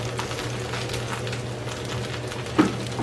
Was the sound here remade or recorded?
recorded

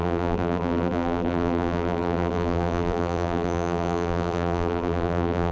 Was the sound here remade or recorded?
remade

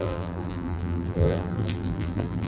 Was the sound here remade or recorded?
remade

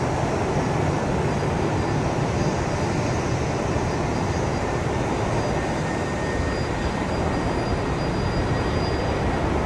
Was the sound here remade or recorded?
recorded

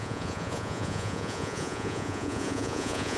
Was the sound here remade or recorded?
remade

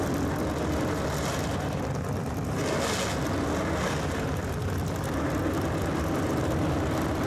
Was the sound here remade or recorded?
recorded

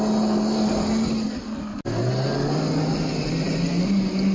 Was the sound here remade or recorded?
recorded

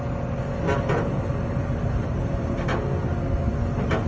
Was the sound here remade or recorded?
recorded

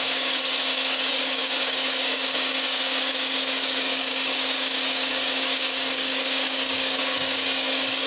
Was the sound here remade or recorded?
remade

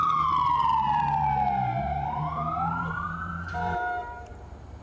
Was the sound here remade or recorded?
remade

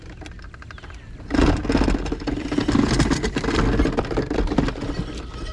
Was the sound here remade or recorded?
recorded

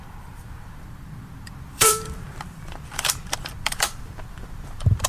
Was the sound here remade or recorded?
remade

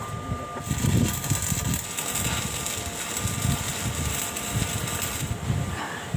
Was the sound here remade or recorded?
recorded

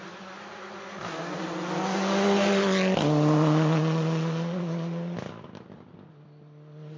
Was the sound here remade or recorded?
recorded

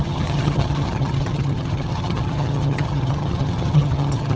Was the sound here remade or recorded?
remade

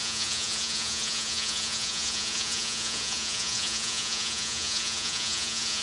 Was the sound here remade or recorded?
remade